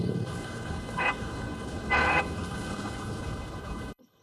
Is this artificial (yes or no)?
yes